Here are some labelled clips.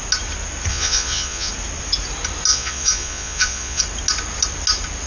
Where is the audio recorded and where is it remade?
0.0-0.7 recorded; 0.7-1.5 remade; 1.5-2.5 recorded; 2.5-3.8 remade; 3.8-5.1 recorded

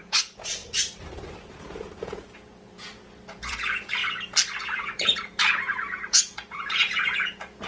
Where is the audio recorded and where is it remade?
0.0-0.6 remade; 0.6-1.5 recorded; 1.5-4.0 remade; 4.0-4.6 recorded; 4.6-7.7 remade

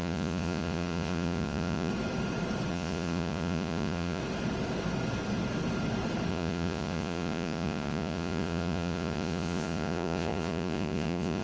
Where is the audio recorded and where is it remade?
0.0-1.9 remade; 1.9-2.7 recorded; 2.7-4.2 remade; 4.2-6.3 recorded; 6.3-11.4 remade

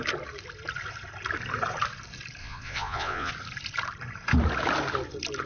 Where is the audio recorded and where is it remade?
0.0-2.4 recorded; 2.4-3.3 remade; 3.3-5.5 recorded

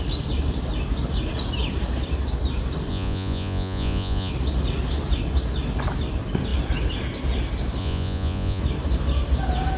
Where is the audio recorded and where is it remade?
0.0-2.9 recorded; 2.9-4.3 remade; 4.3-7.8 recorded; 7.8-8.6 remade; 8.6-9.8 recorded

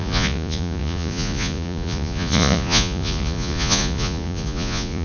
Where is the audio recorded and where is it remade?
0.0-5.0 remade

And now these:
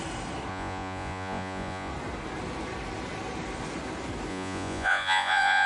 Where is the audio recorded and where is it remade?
0.0-0.5 recorded; 0.5-1.9 remade; 1.9-4.3 recorded; 4.3-5.7 remade

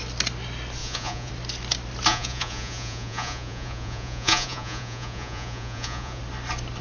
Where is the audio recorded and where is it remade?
0.0-0.8 recorded; 0.8-1.3 remade; 1.3-2.1 recorded; 2.1-6.2 remade; 6.2-6.8 recorded